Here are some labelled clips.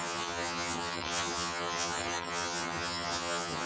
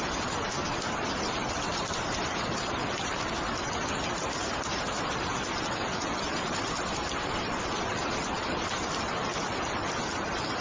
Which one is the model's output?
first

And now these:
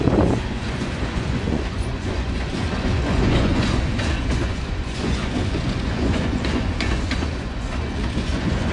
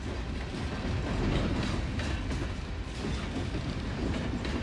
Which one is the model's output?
first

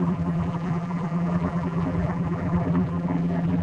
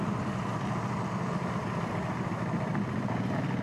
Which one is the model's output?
first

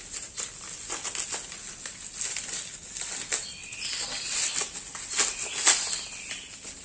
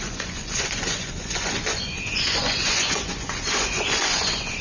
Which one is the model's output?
second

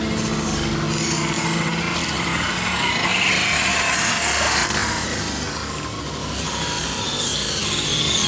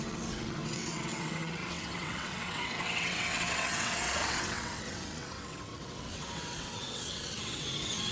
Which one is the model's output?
second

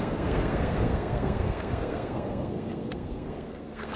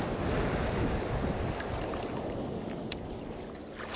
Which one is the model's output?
first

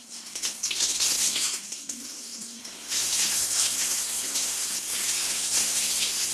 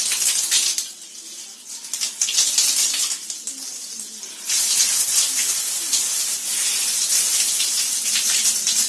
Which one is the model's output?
first